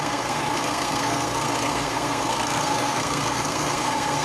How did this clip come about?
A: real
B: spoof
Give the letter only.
B